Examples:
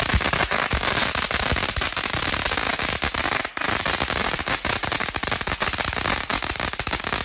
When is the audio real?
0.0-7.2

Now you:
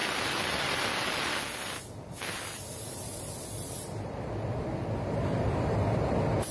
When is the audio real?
none

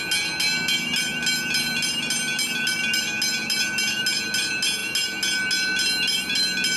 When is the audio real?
0.0-6.8

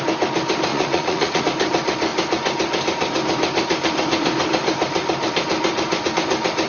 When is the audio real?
0.0-0.7; 1.4-6.7

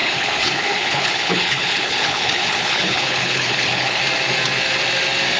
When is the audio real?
4.0-5.4

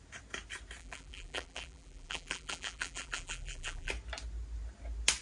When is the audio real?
0.0-0.8; 3.9-5.2

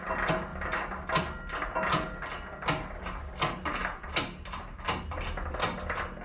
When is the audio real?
0.0-6.2

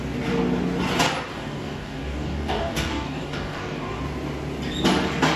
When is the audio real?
0.0-1.3; 4.0-5.4